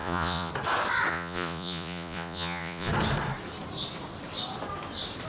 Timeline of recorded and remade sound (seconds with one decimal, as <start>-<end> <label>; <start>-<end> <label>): 0.0-0.5 remade; 0.5-1.1 recorded; 1.1-2.9 remade; 2.9-5.3 recorded